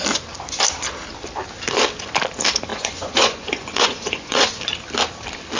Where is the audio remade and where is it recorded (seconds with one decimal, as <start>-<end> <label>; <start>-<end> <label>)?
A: 0.0-2.7 recorded; 2.7-4.6 remade; 4.6-5.6 recorded